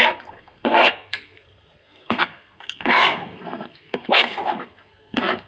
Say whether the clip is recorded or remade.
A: remade